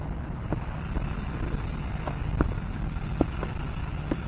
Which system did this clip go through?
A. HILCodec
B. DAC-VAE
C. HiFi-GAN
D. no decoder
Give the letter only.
D